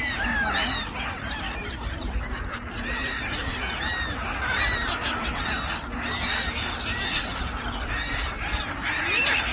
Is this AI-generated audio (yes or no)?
no